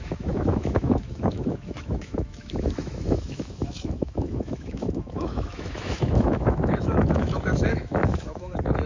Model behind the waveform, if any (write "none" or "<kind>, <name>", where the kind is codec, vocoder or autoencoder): autoencoder, DAC-VAE